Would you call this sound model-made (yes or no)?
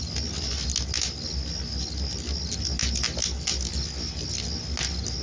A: no